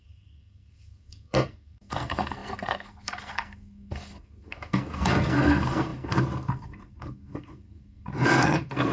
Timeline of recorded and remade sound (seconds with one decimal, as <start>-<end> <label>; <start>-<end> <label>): 0.0-8.9 remade